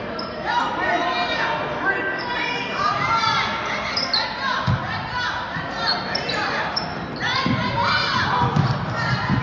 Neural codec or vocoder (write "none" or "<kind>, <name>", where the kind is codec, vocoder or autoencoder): none